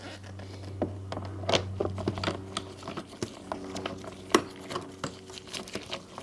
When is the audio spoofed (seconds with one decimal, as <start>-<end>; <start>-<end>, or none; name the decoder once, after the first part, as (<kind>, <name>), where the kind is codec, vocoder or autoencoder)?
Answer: none